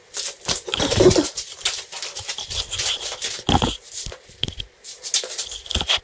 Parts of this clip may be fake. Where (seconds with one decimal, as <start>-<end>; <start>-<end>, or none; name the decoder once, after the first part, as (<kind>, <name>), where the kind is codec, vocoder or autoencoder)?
none